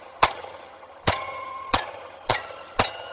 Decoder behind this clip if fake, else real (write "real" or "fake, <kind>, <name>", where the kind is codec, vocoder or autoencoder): fake, vocoder, HiFi-GAN